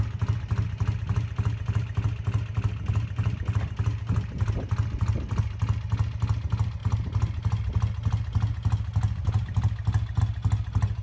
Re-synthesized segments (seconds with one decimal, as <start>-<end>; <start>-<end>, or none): none